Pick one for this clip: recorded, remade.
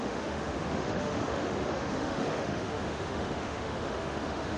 remade